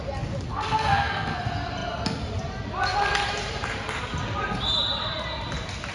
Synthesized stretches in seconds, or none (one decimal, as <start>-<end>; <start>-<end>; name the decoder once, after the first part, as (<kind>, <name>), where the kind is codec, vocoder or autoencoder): 0.5-1.4 (codec, SNAC)